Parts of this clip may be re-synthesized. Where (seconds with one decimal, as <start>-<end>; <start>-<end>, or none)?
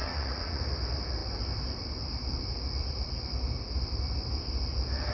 0.0-0.6